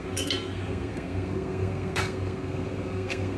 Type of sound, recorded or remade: remade